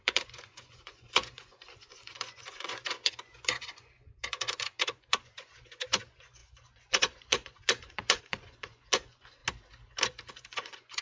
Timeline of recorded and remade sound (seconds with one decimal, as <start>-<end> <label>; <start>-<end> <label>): 0.0-9.4 remade; 9.4-10.3 recorded; 10.3-11.0 remade